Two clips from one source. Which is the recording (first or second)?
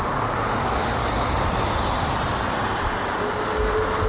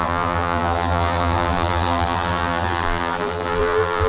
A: first